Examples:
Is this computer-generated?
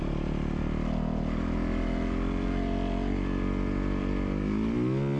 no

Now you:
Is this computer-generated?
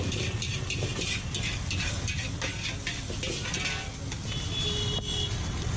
no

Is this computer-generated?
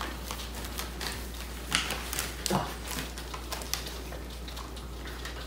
no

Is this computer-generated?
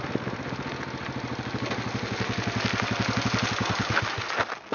no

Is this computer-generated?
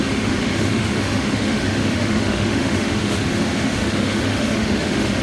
yes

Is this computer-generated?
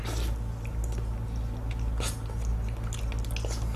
no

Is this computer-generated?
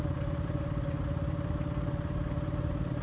no